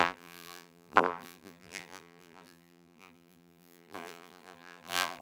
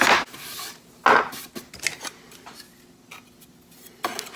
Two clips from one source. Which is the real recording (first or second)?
second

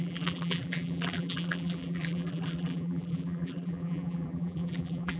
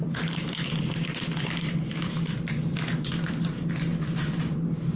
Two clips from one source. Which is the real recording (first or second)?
second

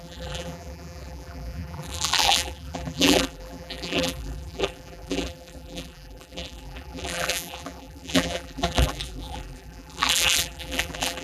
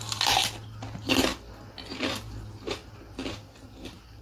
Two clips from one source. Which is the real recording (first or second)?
second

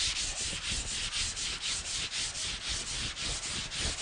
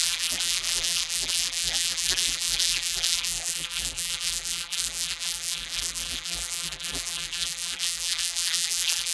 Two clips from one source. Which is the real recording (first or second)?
first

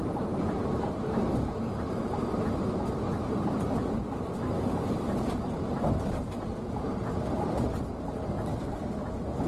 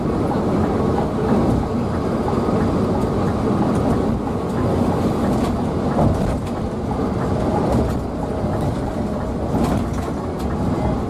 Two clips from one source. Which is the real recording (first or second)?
second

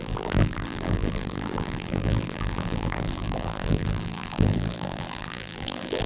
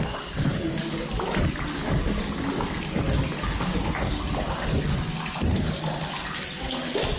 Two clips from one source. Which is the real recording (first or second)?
second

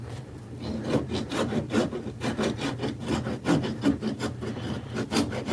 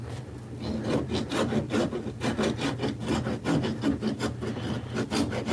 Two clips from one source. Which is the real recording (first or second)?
second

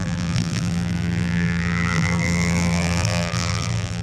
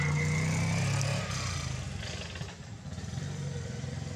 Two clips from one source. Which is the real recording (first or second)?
second